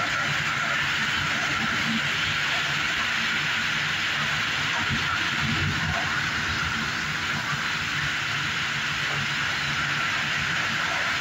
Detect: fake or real real